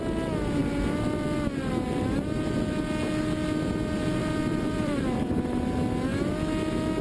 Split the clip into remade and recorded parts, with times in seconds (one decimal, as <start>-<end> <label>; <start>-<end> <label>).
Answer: 0.0-4.2 recorded; 4.2-5.3 remade; 5.3-7.0 recorded

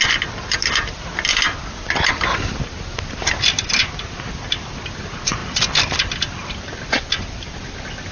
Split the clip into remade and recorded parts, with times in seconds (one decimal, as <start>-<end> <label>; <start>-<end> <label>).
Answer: 0.0-8.1 recorded